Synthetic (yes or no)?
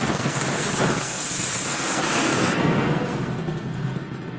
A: yes